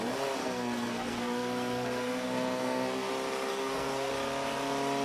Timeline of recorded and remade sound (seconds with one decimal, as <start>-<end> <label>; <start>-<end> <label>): 0.0-0.4 recorded; 0.4-3.1 remade; 3.1-3.5 recorded; 3.5-4.1 remade; 4.1-5.0 recorded